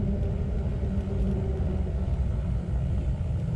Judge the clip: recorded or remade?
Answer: recorded